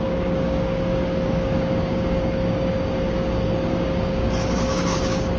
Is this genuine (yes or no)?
no